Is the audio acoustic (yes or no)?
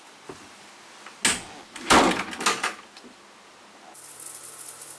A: yes